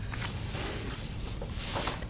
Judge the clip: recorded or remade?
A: recorded